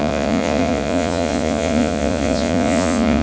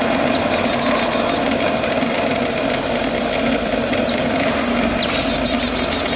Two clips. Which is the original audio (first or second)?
second